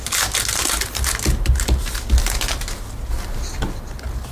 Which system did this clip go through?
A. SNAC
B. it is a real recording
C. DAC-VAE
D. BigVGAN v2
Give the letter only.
B